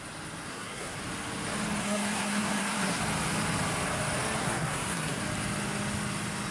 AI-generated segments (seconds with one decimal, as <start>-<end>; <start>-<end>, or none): 0.5-1.0; 1.8-3.0; 4.4-5.2